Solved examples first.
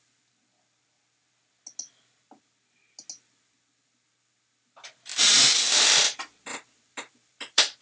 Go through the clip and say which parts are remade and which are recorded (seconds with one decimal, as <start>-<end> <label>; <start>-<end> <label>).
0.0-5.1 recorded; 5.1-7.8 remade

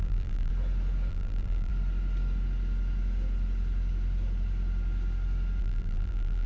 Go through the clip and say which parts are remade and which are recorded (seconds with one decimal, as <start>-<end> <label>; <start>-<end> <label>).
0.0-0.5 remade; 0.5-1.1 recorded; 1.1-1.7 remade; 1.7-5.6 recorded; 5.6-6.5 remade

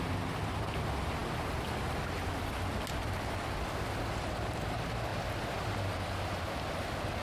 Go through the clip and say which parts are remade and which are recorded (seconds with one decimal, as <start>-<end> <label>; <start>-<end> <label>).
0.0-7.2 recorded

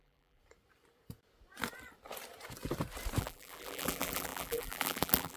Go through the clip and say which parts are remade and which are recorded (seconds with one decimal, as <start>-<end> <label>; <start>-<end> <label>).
0.0-0.4 remade; 0.4-3.2 recorded; 3.2-5.4 remade

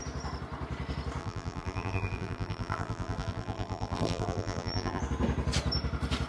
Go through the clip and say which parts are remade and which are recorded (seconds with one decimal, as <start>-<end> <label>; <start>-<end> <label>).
0.0-1.2 recorded; 1.2-5.0 remade; 5.0-6.3 recorded

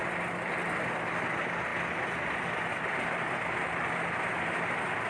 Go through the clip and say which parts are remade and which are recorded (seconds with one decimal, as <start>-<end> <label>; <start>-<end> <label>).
0.0-5.1 recorded

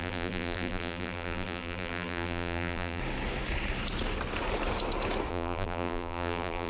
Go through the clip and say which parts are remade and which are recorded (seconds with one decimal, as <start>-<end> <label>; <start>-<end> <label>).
0.0-3.0 remade; 3.0-5.3 recorded; 5.3-6.7 remade

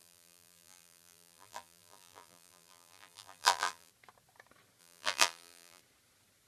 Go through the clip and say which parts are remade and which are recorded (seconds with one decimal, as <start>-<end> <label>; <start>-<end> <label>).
0.0-3.9 remade; 3.9-4.8 recorded; 4.8-5.8 remade; 5.8-6.5 recorded